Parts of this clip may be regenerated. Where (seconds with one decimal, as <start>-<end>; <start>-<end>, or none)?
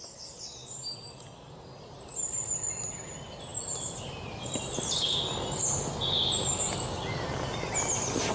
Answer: none